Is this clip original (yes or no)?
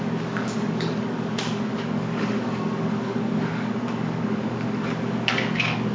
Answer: no